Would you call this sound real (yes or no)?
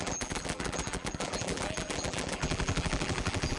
no